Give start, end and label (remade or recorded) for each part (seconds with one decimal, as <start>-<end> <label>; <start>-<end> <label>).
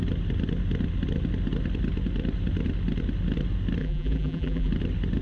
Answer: 0.0-3.8 recorded; 3.8-4.7 remade; 4.7-5.2 recorded